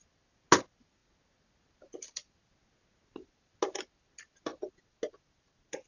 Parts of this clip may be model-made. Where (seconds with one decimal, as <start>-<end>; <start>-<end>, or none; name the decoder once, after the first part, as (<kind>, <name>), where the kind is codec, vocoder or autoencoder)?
none